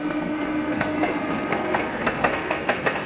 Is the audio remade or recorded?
remade